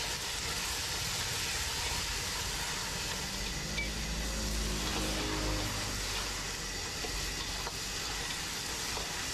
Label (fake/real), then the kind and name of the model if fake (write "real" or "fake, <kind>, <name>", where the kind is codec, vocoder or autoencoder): real